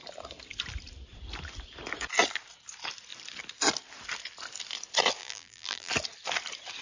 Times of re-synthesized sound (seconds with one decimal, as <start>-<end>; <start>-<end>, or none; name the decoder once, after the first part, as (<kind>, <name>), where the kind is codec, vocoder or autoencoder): 5.2-5.9 (vocoder, BigVGAN v2)